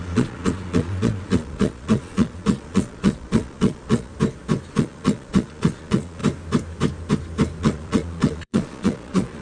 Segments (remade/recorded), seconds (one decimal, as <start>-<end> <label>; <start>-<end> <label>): 0.0-4.1 remade; 4.1-4.7 recorded; 4.7-6.2 remade; 6.2-7.6 recorded; 7.6-9.4 remade